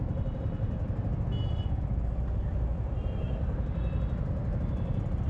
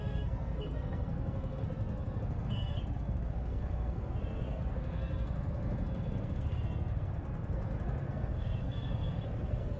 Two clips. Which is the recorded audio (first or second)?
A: first